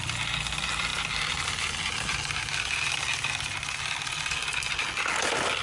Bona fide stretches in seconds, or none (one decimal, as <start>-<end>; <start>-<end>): 0.0-5.6